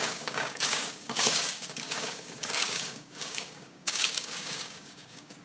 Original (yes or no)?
no